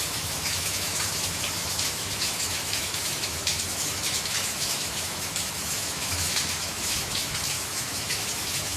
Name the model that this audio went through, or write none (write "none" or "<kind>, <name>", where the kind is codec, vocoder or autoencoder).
autoencoder, DAC-VAE